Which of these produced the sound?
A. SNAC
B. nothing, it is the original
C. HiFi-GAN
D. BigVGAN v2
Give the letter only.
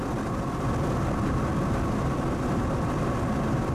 B